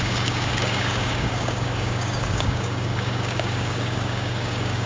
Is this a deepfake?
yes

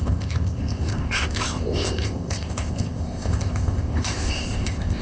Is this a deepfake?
yes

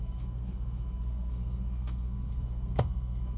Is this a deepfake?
yes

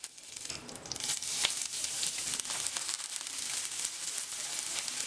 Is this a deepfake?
no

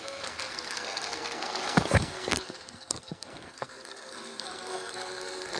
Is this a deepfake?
yes